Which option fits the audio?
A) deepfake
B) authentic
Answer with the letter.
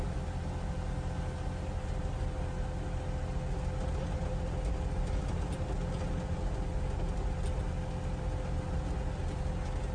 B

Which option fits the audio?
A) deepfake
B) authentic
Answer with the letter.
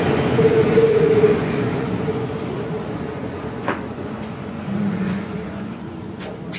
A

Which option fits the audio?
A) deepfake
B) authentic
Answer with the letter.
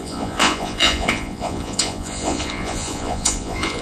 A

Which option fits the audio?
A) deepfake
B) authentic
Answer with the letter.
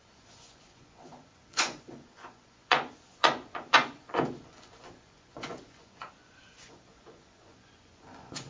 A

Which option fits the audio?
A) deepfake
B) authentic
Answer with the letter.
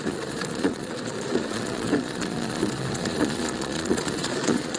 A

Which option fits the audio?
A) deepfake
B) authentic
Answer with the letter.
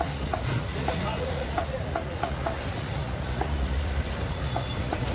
A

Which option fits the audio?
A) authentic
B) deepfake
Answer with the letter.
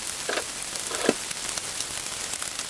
A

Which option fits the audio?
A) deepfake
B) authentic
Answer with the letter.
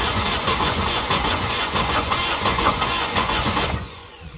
A